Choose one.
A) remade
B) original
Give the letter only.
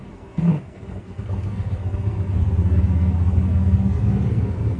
A